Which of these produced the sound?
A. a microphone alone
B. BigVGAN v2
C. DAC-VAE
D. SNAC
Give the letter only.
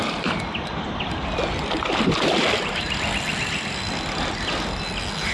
A